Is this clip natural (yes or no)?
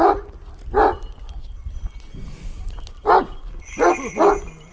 yes